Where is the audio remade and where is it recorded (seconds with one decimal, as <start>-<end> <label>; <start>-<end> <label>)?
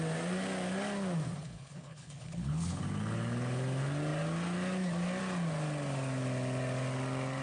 0.0-1.4 recorded; 1.4-2.8 remade; 2.8-7.4 recorded